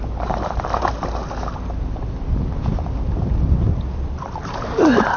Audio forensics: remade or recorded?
recorded